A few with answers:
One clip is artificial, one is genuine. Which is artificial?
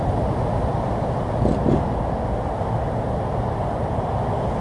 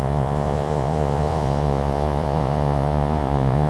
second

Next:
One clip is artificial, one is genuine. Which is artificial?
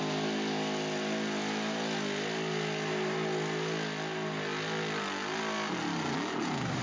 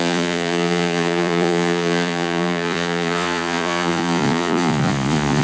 second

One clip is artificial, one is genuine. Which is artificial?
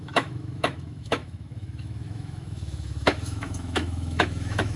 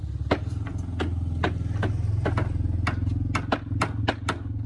first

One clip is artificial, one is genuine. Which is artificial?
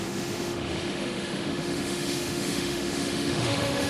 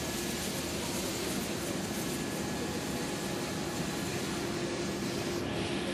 first